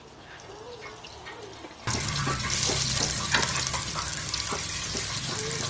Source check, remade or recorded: recorded